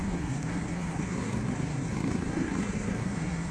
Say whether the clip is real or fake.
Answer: fake